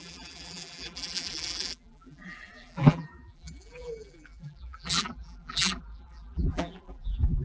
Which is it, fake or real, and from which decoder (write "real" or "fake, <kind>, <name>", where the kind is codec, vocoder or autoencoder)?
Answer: fake, vocoder, BigVGAN v2